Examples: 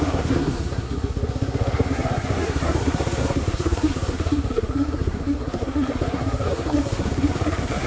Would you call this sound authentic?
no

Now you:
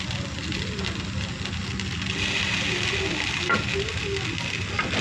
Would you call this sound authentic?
yes